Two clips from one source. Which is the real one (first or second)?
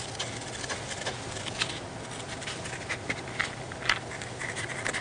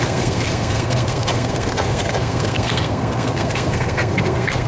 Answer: first